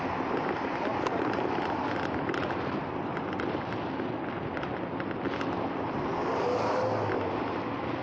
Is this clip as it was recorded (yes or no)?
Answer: yes